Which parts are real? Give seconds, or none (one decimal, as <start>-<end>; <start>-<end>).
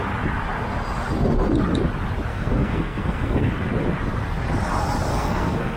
0.0-2.3; 3.5-5.1